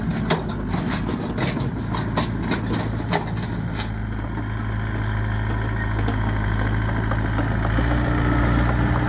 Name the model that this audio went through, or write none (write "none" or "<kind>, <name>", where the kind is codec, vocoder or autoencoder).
none